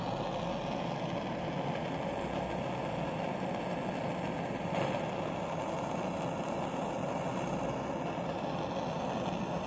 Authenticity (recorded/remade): recorded